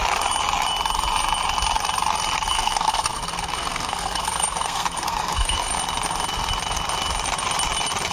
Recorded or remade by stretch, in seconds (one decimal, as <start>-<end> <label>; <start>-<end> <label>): 0.0-2.5 recorded; 2.5-5.7 remade; 5.7-8.1 recorded